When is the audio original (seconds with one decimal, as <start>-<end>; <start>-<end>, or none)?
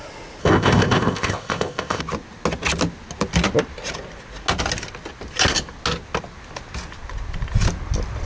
0.0-0.4; 2.0-8.3